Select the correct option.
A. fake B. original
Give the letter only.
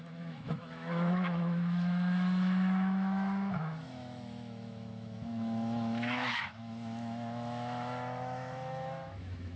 A